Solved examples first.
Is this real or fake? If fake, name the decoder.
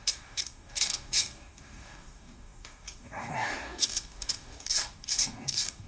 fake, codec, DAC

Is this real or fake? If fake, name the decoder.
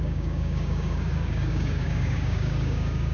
fake, codec, DAC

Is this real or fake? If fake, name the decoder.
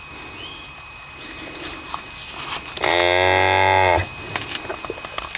real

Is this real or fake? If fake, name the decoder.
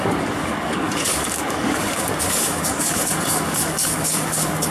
fake, codec, DAC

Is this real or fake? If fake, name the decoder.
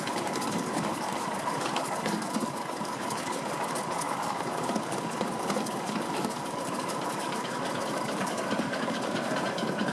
fake, codec, DAC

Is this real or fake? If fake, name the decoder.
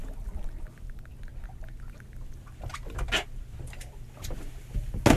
real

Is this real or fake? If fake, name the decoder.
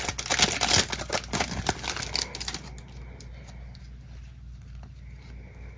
real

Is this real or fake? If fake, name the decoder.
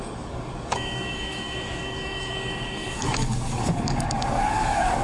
fake, codec, DAC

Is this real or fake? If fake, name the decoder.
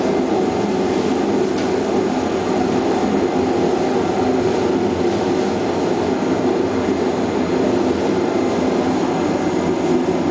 real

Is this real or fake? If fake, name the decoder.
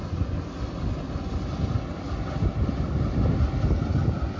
real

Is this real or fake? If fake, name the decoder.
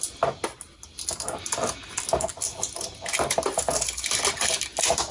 real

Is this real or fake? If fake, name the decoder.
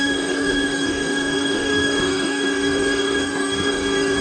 fake, codec, DAC